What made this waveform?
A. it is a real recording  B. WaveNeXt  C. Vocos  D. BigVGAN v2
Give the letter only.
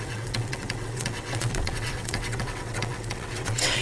B